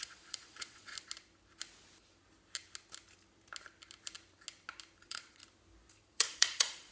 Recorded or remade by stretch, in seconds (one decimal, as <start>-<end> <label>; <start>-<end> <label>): 0.0-0.9 remade; 0.9-5.0 recorded; 5.0-5.4 remade; 5.4-5.9 recorded; 5.9-6.9 remade